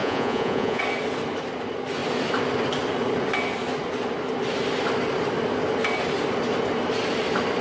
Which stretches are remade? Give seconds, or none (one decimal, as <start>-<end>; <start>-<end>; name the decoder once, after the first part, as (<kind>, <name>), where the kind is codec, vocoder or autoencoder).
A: 0.0-0.8 (vocoder, Vocos)

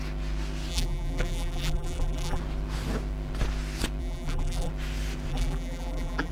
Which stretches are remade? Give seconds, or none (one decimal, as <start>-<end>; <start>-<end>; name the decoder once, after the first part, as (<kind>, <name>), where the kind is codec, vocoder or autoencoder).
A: 0.7-2.4 (vocoder, BigVGAN v2); 4.0-4.7; 5.3-6.3